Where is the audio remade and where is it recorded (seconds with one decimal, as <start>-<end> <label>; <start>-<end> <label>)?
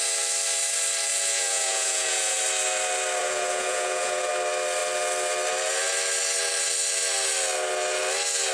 0.0-1.1 recorded; 1.1-2.4 remade; 2.4-3.2 recorded; 3.2-4.3 remade; 4.3-8.5 recorded